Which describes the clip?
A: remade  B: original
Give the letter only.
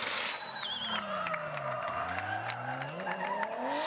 B